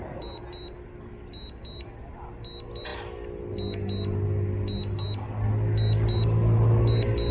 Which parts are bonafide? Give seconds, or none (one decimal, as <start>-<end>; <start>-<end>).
0.0-7.3